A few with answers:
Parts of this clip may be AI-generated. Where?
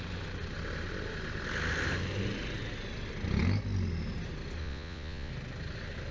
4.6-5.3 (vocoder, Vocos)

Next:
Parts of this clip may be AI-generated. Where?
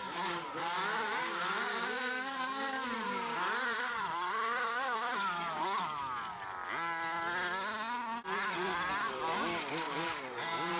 0.0-6.0 (vocoder, BigVGAN v2); 9.7-10.8